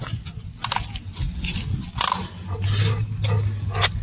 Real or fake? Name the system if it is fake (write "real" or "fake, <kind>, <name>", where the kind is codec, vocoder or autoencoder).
real